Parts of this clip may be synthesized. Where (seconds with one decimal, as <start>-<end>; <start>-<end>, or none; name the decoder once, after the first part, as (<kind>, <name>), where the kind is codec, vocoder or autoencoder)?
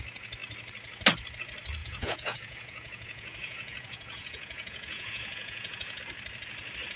1.8-6.0 (vocoder, Vocos)